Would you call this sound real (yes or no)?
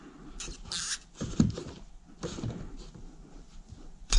yes